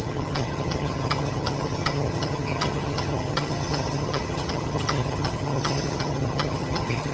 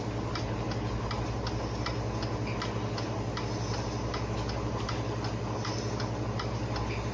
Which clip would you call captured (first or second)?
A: second